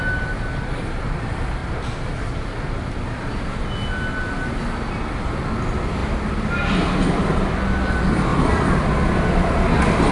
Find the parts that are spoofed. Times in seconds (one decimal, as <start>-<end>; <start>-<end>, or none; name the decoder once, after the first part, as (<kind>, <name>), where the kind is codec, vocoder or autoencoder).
8.3-10.1 (vocoder, BigVGAN v2)